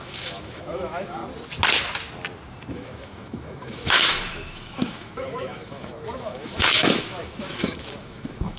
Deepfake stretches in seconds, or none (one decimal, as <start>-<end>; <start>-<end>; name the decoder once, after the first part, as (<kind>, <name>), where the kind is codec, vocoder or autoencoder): 0.0-1.2 (autoencoder, DAC-VAE); 2.7-8.6